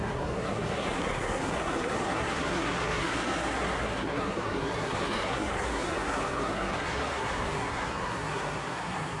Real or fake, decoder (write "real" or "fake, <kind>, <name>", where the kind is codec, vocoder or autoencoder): fake, codec, SNAC